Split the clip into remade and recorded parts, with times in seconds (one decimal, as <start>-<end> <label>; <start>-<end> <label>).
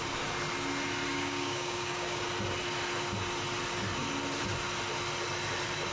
0.0-1.1 recorded; 1.1-2.2 remade; 2.2-5.9 recorded